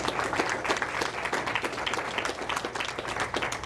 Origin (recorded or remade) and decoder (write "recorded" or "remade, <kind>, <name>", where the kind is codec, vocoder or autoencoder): recorded